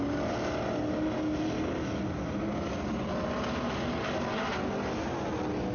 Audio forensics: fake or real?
real